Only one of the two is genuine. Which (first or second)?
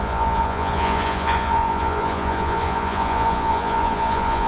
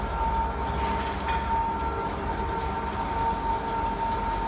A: second